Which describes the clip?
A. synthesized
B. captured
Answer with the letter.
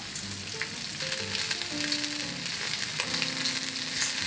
B